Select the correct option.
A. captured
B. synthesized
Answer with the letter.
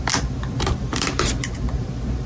B